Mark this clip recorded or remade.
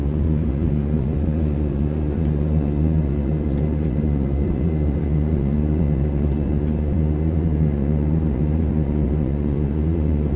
remade